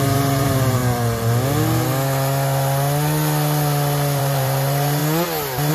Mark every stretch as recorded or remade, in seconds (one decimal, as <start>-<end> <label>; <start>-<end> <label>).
0.0-0.8 remade; 0.8-4.2 recorded; 4.2-5.0 remade; 5.0-5.7 recorded